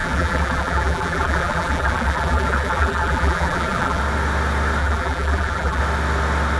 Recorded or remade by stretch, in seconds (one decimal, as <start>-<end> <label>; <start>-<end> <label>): 0.0-4.0 remade; 4.0-4.8 recorded; 4.8-5.8 remade; 5.8-6.6 recorded